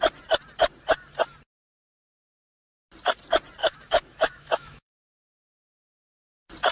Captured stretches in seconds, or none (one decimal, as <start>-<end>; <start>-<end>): 0.0-3.6; 6.2-6.7